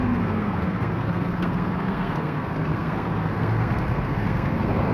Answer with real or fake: fake